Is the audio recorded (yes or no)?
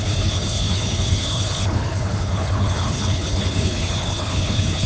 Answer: no